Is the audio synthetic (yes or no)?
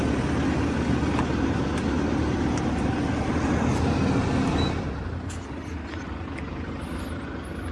no